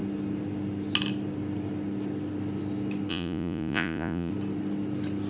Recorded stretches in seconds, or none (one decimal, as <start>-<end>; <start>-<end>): 0.0-3.1; 4.3-5.3